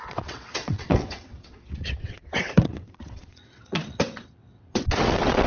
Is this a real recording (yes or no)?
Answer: no